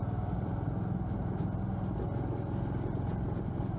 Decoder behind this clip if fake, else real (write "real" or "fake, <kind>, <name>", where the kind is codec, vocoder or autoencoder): real